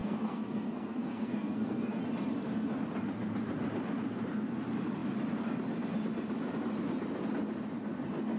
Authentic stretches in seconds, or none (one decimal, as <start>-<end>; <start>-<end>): 2.0-8.4